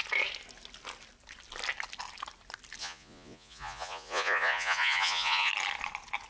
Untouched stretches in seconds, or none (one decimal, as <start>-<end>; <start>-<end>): 0.0-2.8; 5.5-6.3